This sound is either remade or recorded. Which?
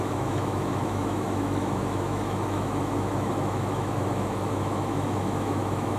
remade